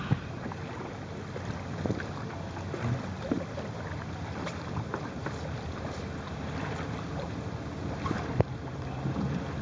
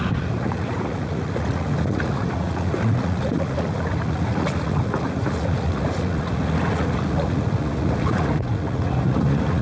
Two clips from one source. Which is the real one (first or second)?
first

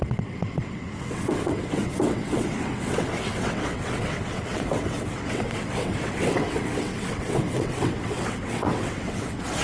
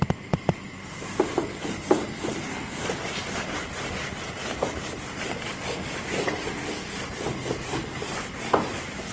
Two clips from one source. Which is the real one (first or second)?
second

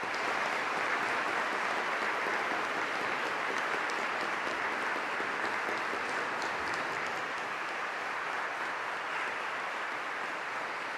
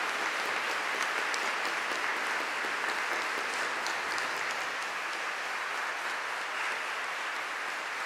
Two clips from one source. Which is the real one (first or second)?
second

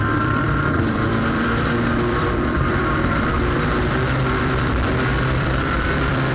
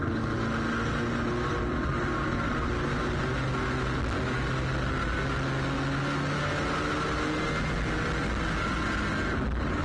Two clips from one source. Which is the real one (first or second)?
second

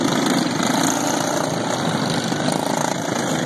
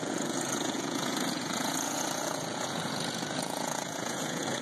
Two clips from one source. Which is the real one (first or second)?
first